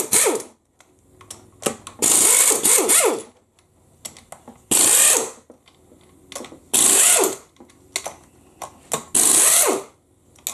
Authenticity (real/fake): real